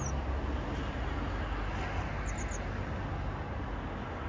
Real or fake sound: real